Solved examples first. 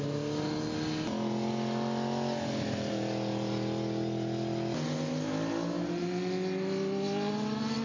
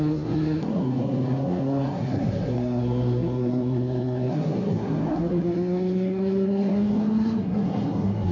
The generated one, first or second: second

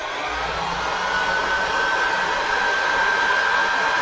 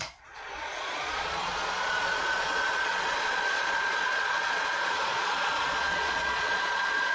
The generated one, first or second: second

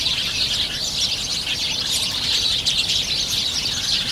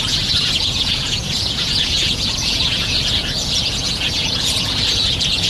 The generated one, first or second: second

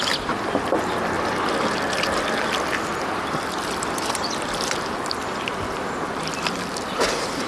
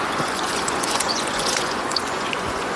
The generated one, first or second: second